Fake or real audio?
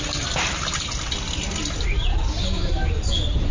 real